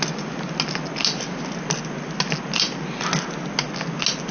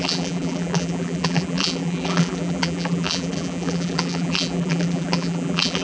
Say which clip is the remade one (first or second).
second